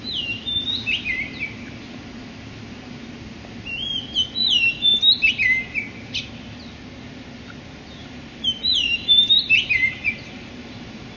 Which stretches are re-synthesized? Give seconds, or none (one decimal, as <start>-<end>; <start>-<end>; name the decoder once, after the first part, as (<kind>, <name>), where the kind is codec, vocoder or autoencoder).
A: 4.4-5.3 (vocoder, BigVGAN v2); 8.0-11.2